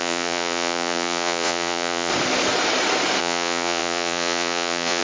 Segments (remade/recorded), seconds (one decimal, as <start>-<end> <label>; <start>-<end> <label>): 0.0-2.1 remade; 2.1-3.2 recorded; 3.2-5.0 remade